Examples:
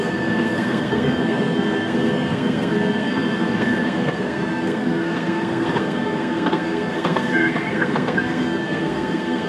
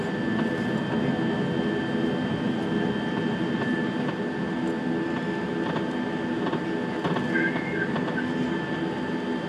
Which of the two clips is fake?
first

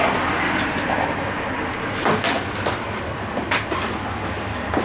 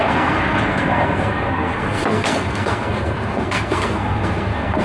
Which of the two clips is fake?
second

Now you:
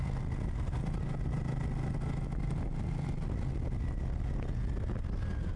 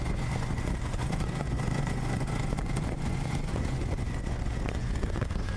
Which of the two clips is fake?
second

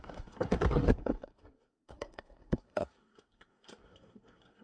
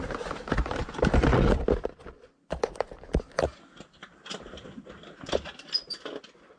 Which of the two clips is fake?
first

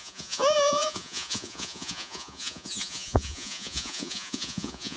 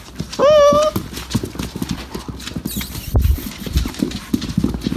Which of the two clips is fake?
first